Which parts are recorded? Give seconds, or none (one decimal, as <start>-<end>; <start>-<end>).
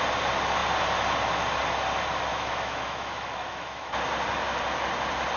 0.0-2.3; 3.9-5.4